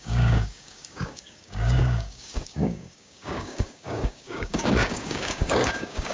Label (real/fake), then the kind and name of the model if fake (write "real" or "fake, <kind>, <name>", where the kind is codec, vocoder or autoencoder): fake, codec, DAC